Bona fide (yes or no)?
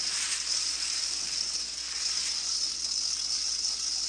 yes